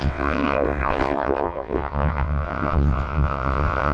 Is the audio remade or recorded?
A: remade